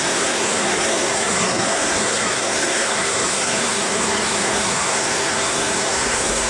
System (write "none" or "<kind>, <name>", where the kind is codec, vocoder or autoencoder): codec, SNAC